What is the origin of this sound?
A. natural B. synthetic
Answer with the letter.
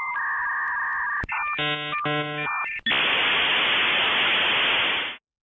A